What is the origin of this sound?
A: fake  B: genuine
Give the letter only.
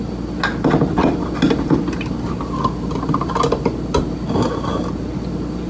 B